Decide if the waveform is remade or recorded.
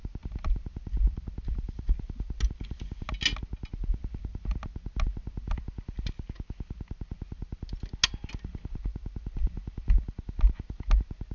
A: recorded